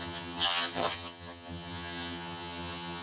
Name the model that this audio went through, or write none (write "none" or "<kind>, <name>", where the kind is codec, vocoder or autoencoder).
vocoder, HiFi-GAN